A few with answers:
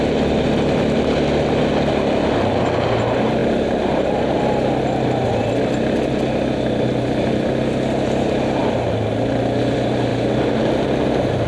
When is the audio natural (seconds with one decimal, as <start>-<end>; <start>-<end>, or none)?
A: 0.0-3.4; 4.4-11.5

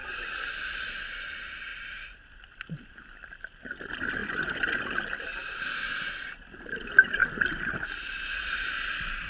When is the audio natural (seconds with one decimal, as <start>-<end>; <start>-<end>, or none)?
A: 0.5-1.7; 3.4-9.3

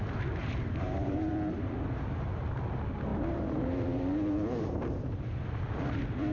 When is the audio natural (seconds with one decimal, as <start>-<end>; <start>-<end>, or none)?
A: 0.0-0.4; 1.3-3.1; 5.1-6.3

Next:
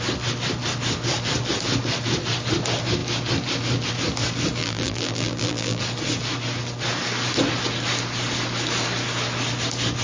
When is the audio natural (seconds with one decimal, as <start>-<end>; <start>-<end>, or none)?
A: 0.0-4.6; 5.8-10.0

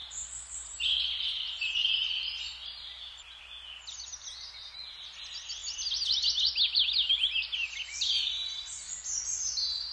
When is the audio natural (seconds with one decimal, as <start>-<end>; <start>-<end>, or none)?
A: 2.1-2.6; 3.4-9.9

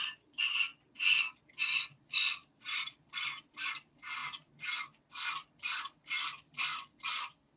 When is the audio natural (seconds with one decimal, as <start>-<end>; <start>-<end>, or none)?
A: 0.7-1.5; 4.2-5.1